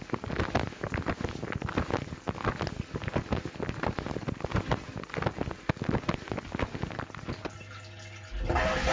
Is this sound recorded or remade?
recorded